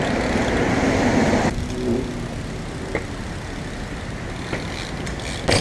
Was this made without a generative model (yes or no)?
yes